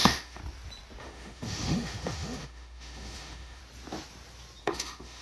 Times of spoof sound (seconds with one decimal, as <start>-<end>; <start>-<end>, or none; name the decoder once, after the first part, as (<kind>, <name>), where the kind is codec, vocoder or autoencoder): 0.0-0.4 (autoencoder, DAC-VAE); 1.0-3.6; 4.6-5.2